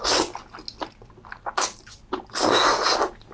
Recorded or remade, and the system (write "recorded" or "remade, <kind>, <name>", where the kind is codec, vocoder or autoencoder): recorded